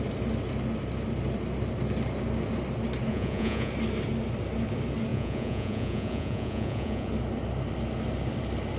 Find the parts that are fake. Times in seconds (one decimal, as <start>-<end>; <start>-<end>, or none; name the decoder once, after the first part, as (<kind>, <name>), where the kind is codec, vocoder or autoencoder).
3.1-3.7 (vocoder, Vocos); 5.1-7.1